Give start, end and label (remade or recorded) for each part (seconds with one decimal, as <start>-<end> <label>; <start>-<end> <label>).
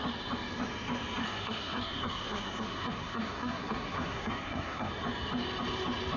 0.0-1.2 recorded; 1.2-4.9 remade; 4.9-6.2 recorded